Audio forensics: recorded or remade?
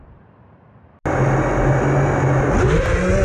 recorded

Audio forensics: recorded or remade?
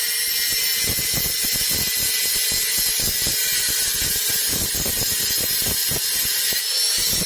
recorded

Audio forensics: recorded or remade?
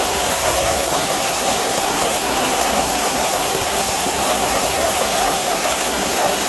remade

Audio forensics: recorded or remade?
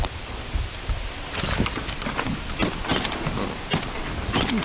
recorded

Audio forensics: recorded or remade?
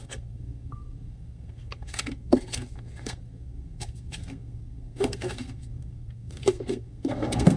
remade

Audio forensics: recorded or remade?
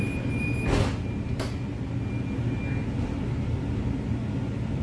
recorded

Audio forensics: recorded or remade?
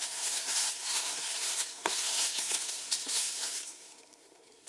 remade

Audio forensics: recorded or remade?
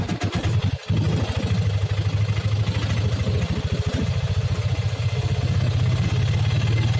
recorded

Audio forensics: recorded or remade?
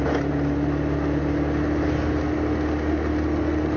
recorded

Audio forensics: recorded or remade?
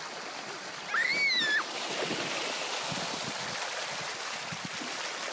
recorded